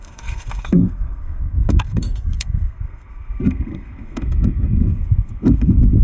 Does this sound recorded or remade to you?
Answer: remade